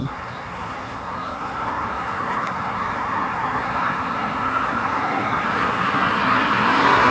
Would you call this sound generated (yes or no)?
yes